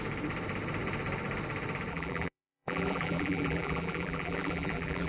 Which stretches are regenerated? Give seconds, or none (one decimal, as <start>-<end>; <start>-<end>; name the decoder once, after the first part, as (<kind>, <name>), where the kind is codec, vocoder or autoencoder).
1.9-5.1 (vocoder, BigVGAN v2)